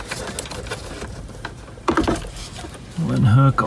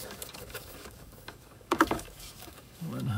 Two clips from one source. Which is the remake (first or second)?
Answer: second